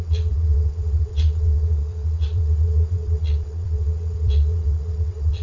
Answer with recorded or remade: remade